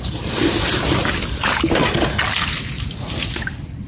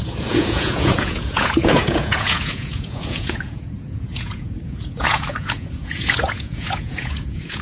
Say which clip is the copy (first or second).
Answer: second